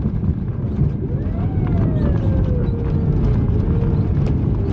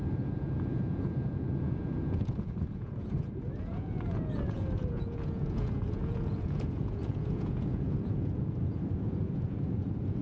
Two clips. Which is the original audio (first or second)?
first